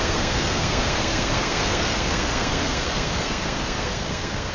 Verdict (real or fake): fake